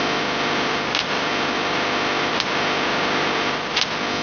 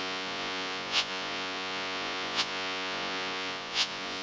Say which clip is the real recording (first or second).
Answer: first